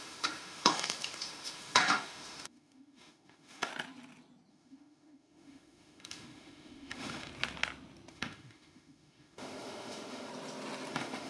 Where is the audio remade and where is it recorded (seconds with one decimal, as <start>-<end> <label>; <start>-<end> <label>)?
0.0-3.7 remade; 3.7-4.5 recorded; 4.5-7.3 remade; 7.3-8.1 recorded; 8.1-10.3 remade; 10.3-10.9 recorded; 10.9-11.3 remade